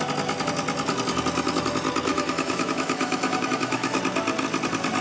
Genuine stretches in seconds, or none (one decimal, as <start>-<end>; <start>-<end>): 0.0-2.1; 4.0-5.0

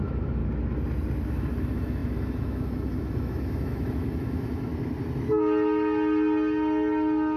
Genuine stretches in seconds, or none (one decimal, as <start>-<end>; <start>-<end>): 0.4-1.3; 4.7-7.4

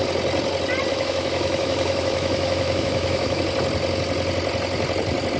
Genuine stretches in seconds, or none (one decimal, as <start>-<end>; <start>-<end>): 0.0-0.9; 3.4-5.4

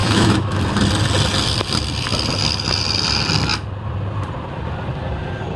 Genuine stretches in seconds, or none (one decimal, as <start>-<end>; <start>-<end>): 0.6-5.6

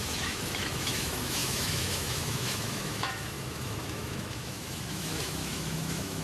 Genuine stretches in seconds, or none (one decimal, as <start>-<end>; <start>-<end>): none